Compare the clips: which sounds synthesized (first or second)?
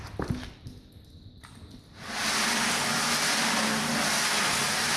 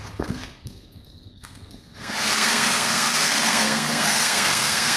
second